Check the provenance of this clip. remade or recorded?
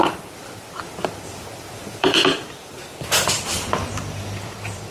remade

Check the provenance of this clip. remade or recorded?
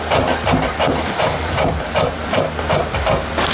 remade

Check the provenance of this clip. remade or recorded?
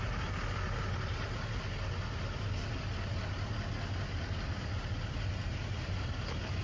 recorded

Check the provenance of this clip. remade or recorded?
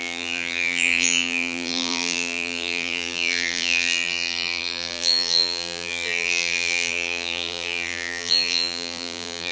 remade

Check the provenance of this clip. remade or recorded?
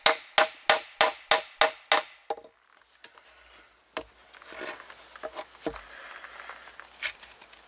recorded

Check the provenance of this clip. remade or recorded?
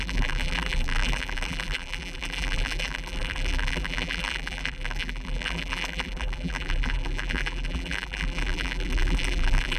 remade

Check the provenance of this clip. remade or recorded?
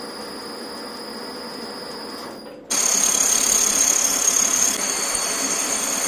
recorded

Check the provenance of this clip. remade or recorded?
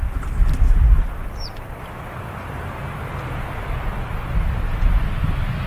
recorded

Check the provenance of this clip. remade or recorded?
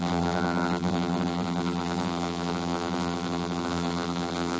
remade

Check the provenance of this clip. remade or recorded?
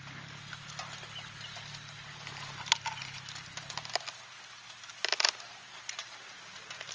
recorded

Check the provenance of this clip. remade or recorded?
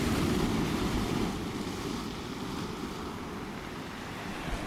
recorded